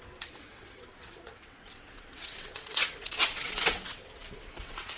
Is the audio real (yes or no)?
no